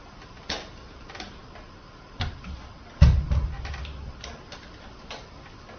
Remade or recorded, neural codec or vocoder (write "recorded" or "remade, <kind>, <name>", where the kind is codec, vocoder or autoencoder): recorded